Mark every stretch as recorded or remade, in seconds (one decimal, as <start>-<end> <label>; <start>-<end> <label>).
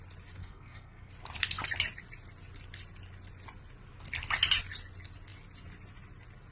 0.0-0.4 recorded; 0.4-1.1 remade; 1.1-6.5 recorded